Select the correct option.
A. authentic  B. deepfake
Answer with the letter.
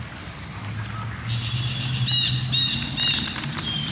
A